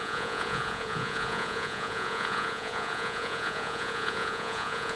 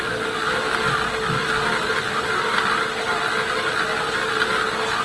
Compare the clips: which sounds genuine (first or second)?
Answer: second